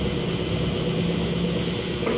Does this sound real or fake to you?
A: real